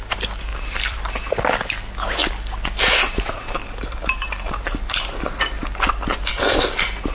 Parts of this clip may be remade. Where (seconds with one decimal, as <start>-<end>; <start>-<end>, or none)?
0.5-1.1; 3.6-5.0